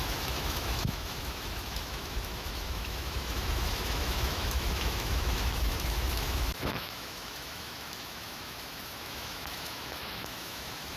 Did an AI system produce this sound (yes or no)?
yes